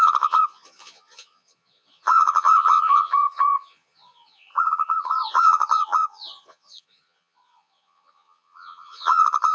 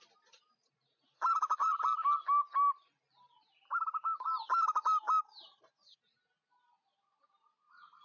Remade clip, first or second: first